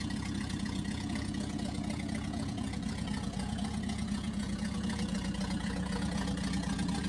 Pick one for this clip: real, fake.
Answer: fake